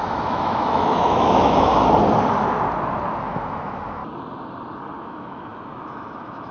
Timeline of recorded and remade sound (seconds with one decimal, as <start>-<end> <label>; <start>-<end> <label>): 0.0-1.7 remade; 1.7-3.2 recorded; 3.2-4.0 remade; 4.0-5.0 recorded; 5.0-6.5 remade

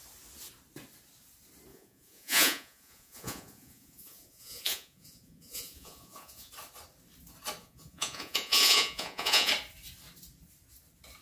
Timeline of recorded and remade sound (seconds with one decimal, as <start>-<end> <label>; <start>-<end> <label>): 0.0-1.7 recorded; 1.7-6.5 remade; 6.5-7.6 recorded; 7.6-9.5 remade; 9.5-11.2 recorded

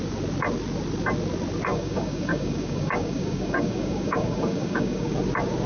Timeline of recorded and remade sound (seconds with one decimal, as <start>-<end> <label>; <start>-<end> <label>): 0.0-1.7 recorded; 1.7-5.1 remade; 5.1-5.7 recorded

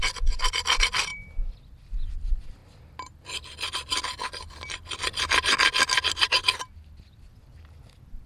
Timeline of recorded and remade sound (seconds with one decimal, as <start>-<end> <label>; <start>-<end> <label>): 0.0-8.3 recorded

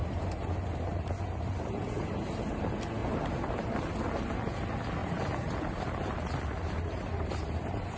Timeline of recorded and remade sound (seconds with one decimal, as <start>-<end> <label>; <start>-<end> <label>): 0.0-2.6 remade; 2.6-3.0 recorded; 3.0-3.8 remade; 3.8-5.0 recorded; 5.0-8.0 remade